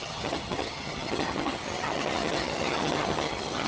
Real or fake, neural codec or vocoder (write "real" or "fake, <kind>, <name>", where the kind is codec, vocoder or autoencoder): fake, vocoder, HiFi-GAN